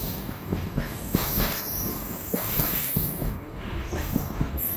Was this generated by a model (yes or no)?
yes